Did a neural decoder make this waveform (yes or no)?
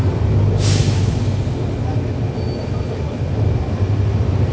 no